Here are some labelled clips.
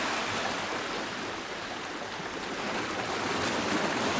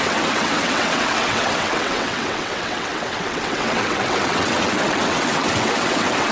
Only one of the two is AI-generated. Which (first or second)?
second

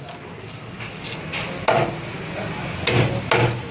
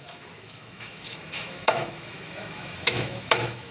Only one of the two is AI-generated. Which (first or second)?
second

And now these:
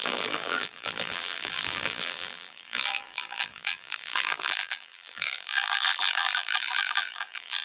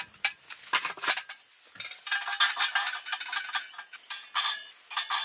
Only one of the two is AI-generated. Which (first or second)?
first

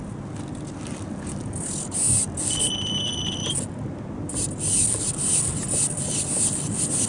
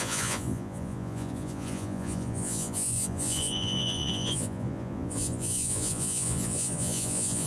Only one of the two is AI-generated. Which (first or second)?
second